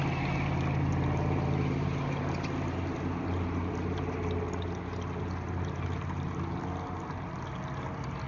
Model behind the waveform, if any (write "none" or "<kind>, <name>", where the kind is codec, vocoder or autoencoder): none